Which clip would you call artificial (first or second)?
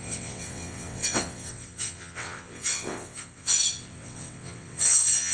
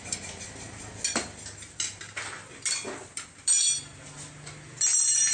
first